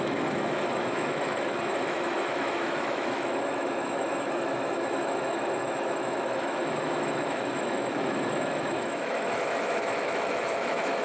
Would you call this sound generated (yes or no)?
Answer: yes